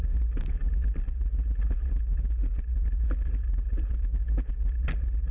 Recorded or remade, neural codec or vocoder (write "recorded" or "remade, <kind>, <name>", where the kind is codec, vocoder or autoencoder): recorded